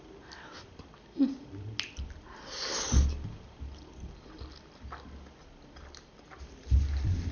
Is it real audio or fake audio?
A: real